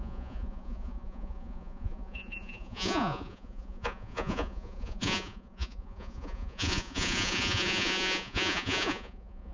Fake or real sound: fake